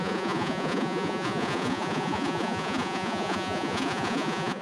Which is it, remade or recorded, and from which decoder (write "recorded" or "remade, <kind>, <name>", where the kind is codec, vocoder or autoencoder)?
remade, vocoder, Vocos